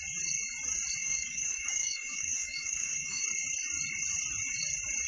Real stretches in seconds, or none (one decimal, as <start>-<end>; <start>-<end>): 0.0-1.0; 3.2-5.1